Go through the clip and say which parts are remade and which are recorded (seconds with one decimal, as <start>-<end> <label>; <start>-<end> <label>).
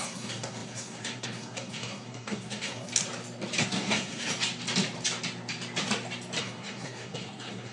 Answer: 0.0-2.9 remade; 2.9-3.6 recorded; 3.6-4.3 remade; 4.3-6.4 recorded; 6.4-7.7 remade